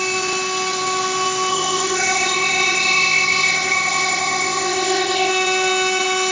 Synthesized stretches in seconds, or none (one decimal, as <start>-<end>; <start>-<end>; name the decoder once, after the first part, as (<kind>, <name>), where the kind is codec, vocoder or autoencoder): 1.5-5.3 (codec, ZipCodec)